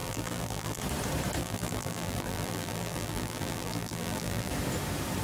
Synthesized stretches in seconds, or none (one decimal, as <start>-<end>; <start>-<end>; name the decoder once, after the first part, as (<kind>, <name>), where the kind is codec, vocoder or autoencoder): 0.0-0.8 (vocoder, BigVGAN v2); 1.4-4.5